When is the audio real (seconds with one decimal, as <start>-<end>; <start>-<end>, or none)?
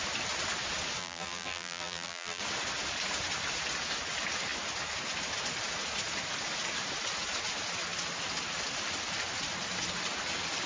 0.0-1.0; 2.4-10.7